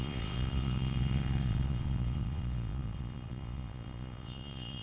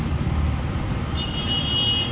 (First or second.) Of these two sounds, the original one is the second